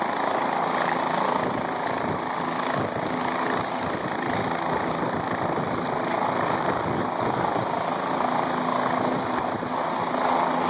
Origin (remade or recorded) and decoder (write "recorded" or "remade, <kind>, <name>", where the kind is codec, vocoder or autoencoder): recorded